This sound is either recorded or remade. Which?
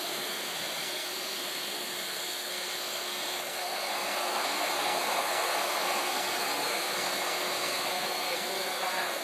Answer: remade